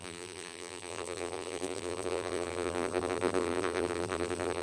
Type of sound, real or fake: fake